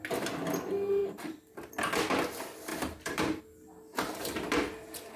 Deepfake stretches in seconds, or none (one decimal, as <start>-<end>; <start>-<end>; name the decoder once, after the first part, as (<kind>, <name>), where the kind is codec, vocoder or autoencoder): 1.0-1.7 (vocoder, BigVGAN v2); 2.7-3.4